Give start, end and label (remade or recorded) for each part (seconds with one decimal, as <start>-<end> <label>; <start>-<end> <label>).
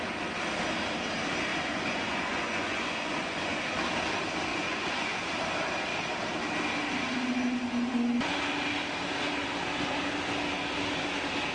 0.0-1.5 recorded; 1.5-3.6 remade; 3.6-4.5 recorded; 4.5-5.3 remade; 5.3-11.5 recorded